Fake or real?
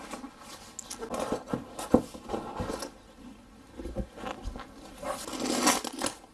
real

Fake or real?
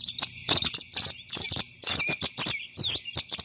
real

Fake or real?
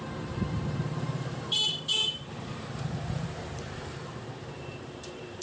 fake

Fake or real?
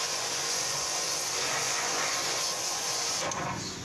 fake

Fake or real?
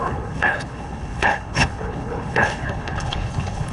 fake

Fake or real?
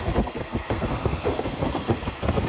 fake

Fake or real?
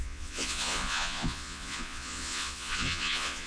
fake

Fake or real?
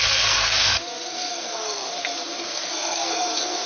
fake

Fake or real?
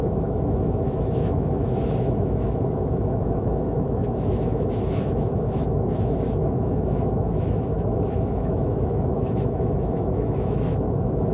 fake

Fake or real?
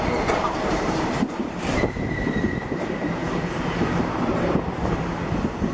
fake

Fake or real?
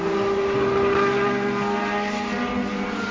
real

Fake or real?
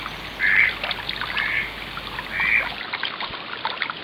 real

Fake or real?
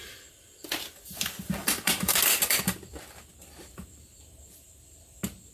fake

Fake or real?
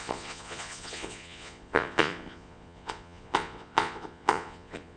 fake